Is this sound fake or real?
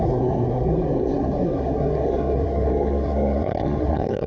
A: fake